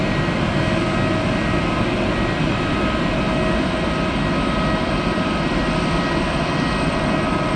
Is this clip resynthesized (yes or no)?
no